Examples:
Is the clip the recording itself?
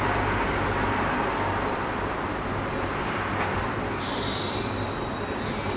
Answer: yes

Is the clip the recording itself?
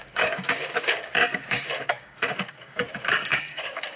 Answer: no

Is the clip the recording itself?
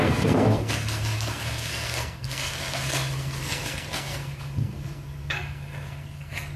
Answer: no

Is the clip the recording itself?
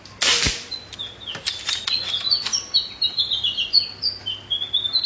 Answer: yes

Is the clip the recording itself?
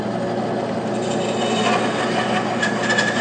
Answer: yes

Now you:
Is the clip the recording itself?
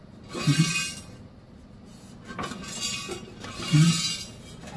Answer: yes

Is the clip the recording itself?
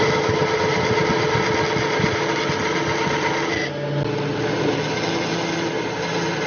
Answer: yes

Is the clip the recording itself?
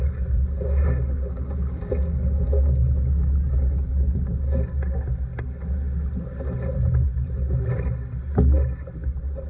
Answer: yes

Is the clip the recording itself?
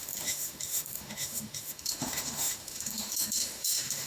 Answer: no